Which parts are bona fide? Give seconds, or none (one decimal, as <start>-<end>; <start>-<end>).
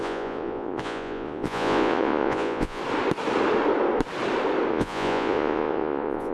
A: 2.8-4.7